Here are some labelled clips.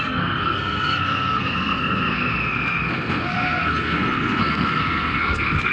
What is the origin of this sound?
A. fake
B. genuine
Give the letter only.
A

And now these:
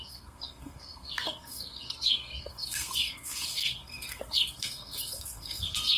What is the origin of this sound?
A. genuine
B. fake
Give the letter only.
B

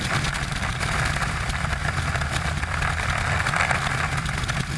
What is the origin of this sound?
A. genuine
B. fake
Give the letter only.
A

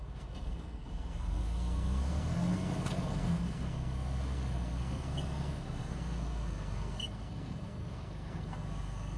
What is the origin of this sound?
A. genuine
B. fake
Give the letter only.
B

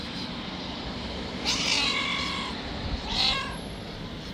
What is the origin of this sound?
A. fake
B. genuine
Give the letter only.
B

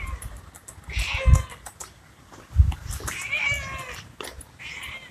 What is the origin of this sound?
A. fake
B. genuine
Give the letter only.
B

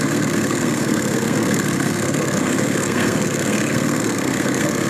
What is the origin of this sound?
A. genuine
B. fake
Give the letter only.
B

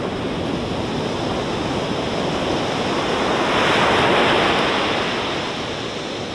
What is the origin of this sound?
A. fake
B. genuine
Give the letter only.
B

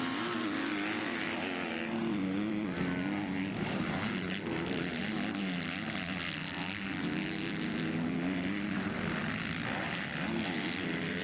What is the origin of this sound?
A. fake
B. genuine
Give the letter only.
B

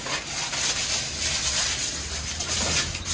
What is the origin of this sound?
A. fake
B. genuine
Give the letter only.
B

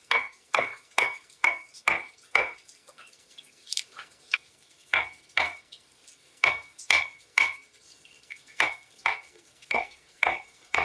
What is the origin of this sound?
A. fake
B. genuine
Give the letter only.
A